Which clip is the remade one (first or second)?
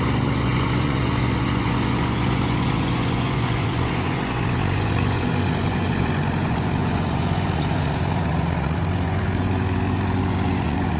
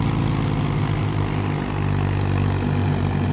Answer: first